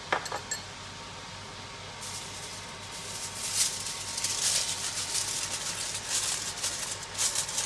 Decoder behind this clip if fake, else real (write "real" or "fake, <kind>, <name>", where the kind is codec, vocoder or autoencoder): real